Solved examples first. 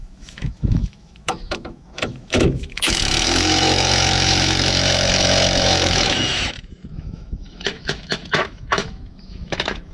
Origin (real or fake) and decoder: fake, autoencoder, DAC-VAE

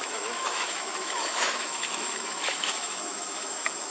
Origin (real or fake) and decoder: fake, autoencoder, DAC-VAE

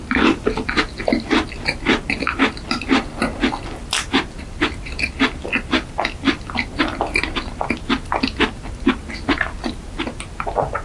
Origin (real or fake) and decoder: real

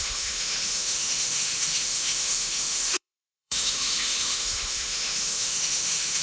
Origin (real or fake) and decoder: fake, autoencoder, DAC-VAE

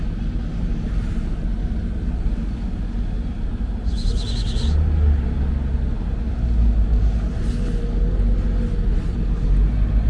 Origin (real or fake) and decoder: real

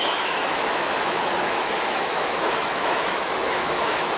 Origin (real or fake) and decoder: fake, autoencoder, DAC-VAE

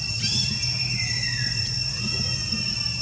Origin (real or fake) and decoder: real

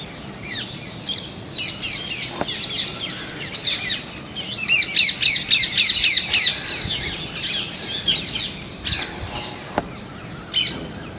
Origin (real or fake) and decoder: real